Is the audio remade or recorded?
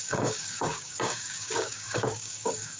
remade